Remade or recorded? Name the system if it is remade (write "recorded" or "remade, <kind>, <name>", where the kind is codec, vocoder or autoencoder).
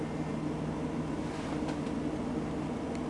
recorded